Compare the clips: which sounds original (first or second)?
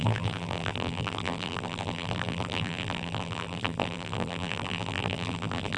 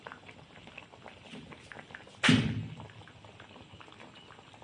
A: second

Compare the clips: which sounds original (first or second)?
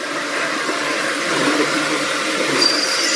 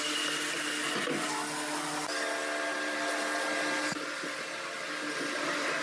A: second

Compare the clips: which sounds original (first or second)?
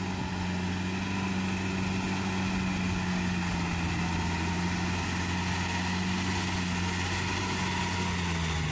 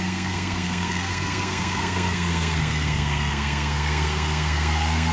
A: first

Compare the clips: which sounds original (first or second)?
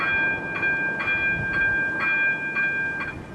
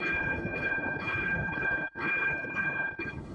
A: first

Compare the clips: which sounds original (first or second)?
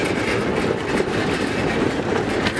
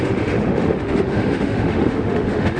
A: first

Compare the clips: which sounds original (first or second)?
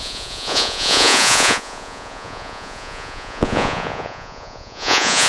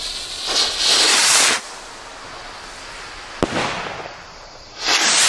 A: second